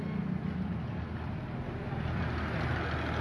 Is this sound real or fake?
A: real